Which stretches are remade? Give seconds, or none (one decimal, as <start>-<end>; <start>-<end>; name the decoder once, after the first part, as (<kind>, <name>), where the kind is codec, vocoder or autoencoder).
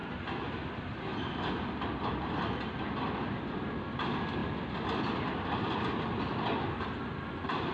none